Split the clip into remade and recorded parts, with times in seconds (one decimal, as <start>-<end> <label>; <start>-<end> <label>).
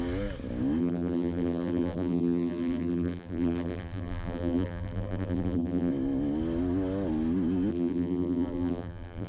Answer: 0.0-0.8 recorded; 0.8-5.9 remade; 5.9-7.7 recorded; 7.7-9.3 remade